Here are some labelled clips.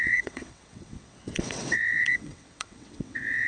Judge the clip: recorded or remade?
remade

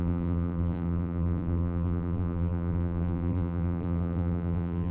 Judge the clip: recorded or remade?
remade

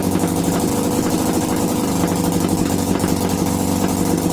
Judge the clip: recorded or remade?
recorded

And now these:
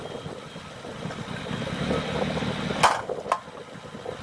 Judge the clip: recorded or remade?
recorded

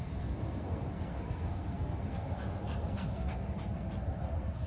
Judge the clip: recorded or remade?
remade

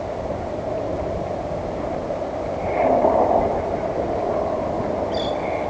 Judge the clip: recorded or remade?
recorded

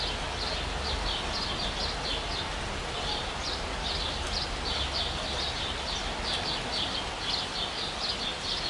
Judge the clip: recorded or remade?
recorded